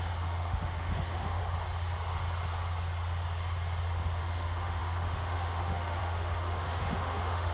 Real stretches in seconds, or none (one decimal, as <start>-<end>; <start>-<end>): 1.4-4.2